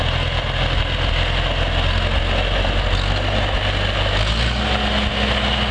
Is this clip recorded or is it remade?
recorded